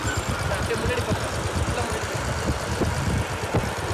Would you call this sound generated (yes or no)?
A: no